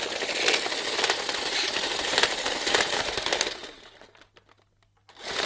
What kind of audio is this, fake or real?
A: real